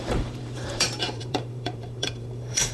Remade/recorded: remade